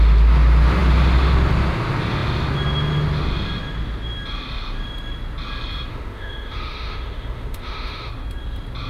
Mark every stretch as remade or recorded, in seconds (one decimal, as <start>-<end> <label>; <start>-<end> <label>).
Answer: 0.0-5.9 recorded; 5.9-8.1 remade; 8.1-8.9 recorded